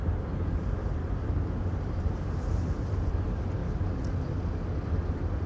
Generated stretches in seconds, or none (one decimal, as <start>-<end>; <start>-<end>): 0.0-3.6